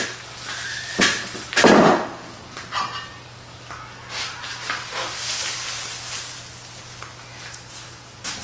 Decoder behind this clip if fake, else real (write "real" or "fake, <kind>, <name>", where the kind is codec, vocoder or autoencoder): real